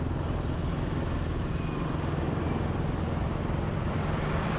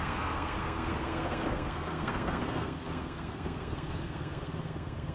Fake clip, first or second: second